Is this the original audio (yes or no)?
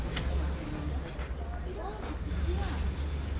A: yes